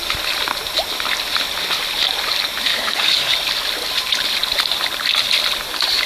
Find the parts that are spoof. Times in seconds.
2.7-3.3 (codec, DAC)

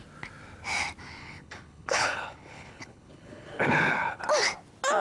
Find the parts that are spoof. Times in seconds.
1.2-4.2 (codec, HILCodec)

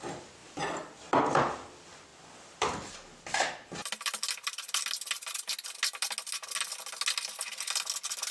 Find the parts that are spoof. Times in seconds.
0.4-1.2 (vocoder, BigVGAN v2); 2.1-2.9

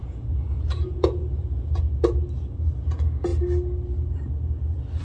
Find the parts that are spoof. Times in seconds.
0.0-1.8 (vocoder, Vocos)